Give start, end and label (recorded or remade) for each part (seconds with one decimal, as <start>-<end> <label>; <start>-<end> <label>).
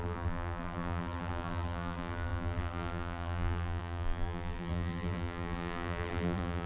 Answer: 0.0-6.7 remade